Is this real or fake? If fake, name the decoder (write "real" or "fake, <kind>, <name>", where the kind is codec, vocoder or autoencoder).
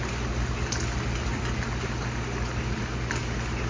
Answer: real